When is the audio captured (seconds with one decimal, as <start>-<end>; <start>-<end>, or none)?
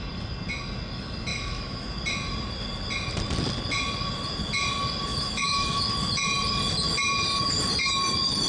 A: 0.0-1.3; 1.9-5.1; 5.8-8.5